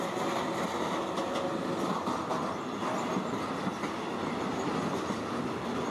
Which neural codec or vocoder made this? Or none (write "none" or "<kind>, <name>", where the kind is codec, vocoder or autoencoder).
none